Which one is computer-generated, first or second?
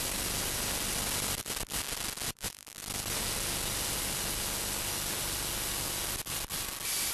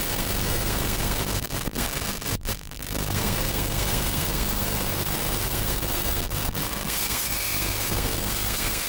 second